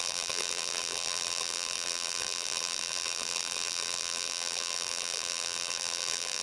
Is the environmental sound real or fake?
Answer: fake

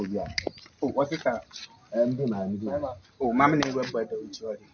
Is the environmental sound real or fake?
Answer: real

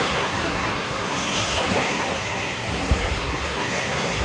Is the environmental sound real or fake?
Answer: fake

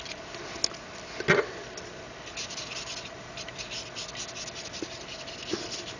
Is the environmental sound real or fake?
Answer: real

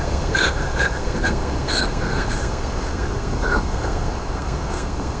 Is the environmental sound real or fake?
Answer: fake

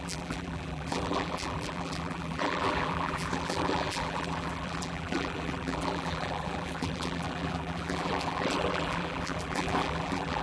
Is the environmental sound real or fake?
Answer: fake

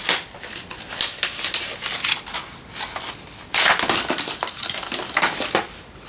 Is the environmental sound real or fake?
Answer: real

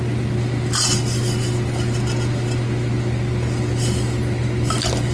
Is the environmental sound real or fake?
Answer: real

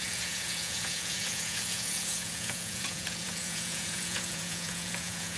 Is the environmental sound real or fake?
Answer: fake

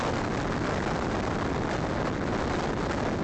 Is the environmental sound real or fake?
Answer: real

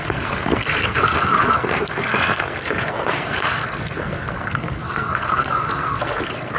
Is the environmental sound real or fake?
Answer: fake